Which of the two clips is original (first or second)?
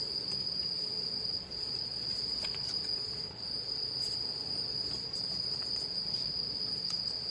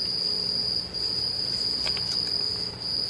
second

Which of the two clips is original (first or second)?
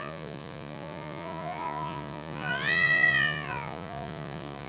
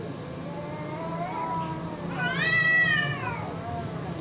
second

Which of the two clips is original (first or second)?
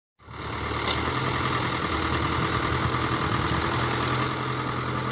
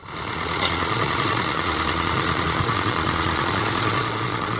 first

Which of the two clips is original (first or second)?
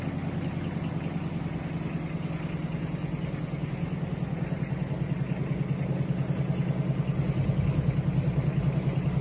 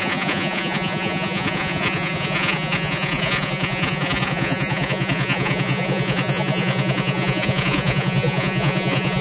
first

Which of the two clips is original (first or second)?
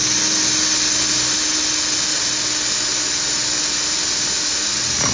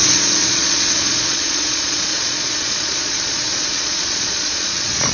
first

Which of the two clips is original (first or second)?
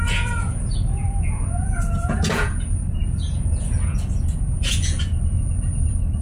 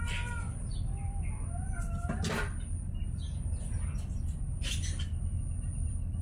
second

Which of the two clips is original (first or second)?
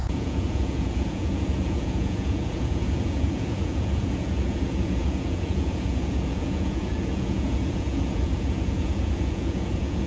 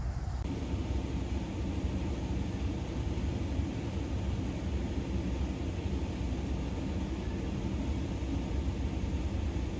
second